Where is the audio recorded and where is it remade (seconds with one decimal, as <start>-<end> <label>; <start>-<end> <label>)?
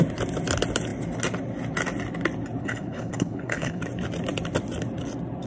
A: 0.0-2.6 recorded; 2.6-3.8 remade; 3.8-5.5 recorded